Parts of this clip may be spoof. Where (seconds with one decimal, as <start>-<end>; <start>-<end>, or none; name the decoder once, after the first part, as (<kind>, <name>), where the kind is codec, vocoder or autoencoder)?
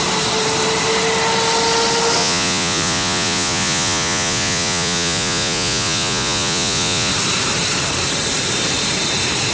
2.2-7.1 (vocoder, Vocos)